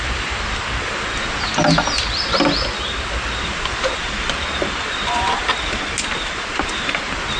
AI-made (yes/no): no